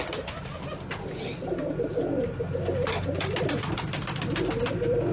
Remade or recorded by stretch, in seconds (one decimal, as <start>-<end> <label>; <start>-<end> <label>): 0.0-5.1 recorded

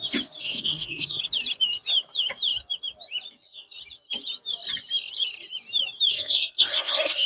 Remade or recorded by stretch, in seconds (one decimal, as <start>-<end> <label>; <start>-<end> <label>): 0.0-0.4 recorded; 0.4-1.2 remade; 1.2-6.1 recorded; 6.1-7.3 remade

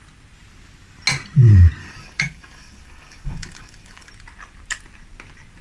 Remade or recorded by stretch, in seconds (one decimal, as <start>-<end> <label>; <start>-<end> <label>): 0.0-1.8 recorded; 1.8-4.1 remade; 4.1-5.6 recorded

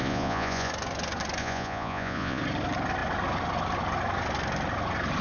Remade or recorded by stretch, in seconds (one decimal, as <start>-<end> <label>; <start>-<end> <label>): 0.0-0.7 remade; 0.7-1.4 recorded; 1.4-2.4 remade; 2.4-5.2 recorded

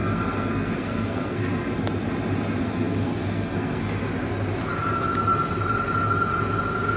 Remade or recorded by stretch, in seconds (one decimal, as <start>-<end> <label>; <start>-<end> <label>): 0.0-1.5 remade; 1.5-2.6 recorded; 2.6-3.8 remade; 3.8-7.0 recorded

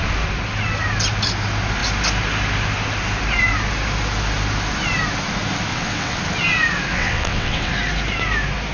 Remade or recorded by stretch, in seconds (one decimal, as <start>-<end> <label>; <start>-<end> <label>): 0.0-5.7 recorded; 5.7-6.2 remade; 6.2-6.9 recorded; 6.9-7.7 remade; 7.7-8.7 recorded

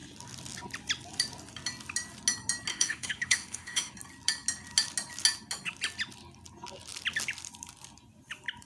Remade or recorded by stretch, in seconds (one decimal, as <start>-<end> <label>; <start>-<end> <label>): 0.0-2.7 recorded; 2.7-3.9 remade; 3.9-8.7 recorded